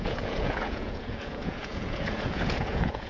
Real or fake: fake